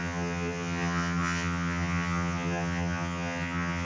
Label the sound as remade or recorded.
remade